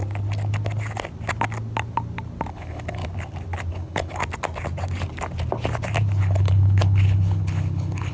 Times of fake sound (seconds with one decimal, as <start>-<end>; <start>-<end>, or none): 2.5-3.0; 3.7-4.2; 6.2-8.1